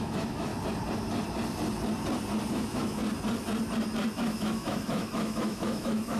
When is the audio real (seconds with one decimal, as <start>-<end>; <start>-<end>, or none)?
0.5-2.5; 3.0-4.1